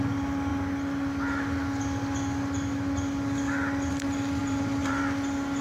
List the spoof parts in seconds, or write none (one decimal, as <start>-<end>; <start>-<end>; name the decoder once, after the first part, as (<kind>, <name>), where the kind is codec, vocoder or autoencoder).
4.4-5.0 (vocoder, BigVGAN v2)